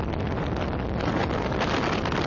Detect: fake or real real